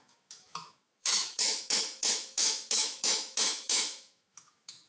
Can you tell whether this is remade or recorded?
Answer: remade